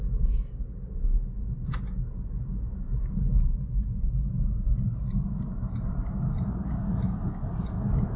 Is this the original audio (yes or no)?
yes